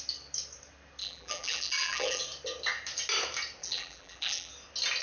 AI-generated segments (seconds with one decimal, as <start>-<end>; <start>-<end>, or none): 1.0-2.2; 3.6-4.5